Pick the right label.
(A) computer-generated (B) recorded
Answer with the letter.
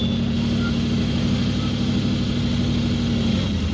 B